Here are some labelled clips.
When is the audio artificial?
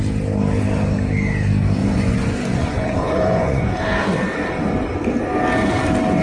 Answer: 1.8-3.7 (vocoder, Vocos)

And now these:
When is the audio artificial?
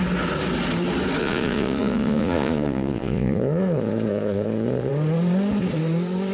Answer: 1.2-4.9 (vocoder, Vocos)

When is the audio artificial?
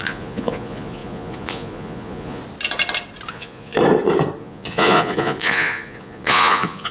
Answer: 0.0-2.4 (vocoder, Vocos); 3.3-3.8; 4.4-6.9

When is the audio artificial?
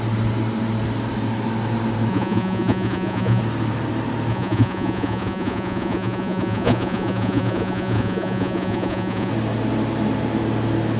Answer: 2.1-3.4 (vocoder, Vocos); 4.3-9.3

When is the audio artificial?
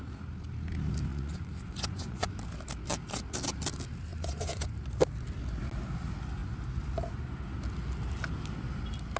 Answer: 1.1-2.3 (vocoder, Vocos); 4.1-4.7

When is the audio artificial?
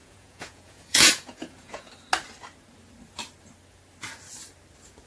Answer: 0.0-1.9 (vocoder, Vocos)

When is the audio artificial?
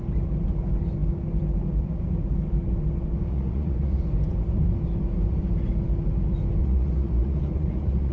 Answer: 3.3-4.0 (vocoder, Vocos); 6.6-8.1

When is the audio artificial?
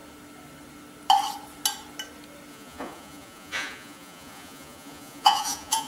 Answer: 2.5-5.9 (vocoder, Vocos)